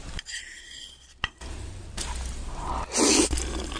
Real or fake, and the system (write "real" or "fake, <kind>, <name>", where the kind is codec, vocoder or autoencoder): real